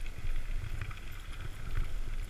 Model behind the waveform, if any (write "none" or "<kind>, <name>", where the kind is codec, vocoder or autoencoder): none